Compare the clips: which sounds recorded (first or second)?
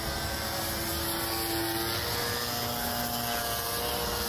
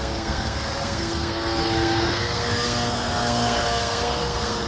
first